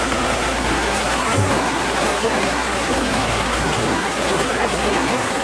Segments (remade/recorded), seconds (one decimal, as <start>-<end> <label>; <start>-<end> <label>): 0.0-5.4 remade